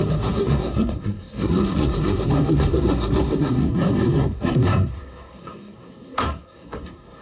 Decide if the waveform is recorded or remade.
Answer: remade